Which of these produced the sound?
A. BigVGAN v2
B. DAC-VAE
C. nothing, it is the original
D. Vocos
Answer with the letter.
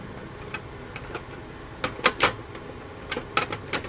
C